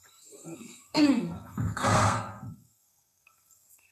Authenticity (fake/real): fake